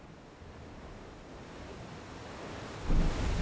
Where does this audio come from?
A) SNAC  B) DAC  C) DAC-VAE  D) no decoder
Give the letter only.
D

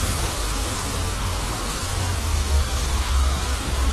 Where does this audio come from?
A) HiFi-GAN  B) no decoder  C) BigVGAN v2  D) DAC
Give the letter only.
D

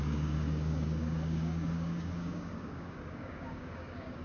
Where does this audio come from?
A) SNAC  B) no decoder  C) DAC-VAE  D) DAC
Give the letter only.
D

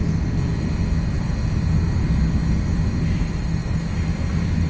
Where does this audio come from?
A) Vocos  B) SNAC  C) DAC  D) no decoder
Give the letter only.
D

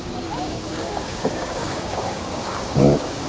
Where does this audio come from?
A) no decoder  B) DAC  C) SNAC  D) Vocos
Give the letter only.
B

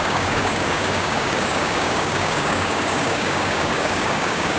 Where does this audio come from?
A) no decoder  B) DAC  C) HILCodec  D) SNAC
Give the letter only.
B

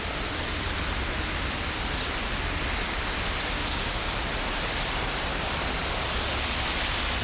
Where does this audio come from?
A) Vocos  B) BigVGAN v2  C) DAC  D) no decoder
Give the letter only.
D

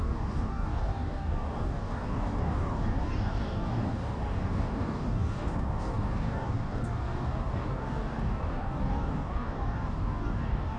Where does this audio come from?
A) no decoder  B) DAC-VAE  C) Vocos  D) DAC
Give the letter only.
D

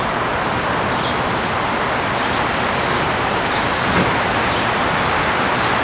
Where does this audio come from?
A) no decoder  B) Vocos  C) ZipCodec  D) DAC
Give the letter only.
A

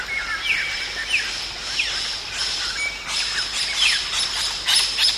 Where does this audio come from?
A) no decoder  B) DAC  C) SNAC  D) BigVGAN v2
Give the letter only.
A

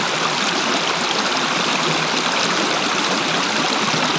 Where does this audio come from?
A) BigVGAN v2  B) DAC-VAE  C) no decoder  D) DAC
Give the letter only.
C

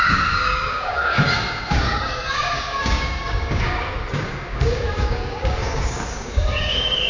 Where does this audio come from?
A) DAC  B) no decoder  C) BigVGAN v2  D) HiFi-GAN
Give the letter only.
A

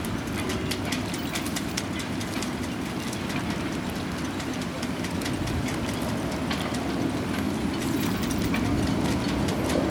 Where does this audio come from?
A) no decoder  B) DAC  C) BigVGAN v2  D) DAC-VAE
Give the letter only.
A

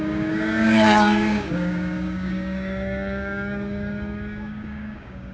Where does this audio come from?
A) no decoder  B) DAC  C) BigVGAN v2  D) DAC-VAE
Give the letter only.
B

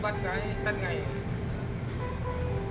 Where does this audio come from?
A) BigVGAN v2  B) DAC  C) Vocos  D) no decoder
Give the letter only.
D